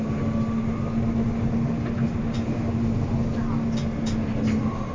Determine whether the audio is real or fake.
real